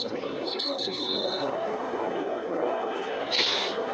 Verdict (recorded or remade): remade